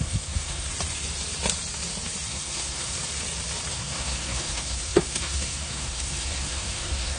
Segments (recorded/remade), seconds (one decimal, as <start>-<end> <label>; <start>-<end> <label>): 0.0-0.7 remade; 0.7-2.3 recorded; 2.3-2.9 remade; 2.9-3.7 recorded; 3.7-7.2 remade